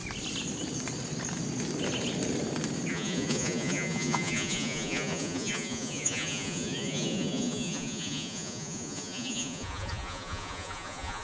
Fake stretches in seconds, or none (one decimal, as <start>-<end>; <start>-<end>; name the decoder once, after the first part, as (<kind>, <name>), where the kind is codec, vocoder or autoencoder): 2.9-11.2 (vocoder, Vocos)